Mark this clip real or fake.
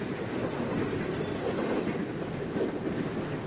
real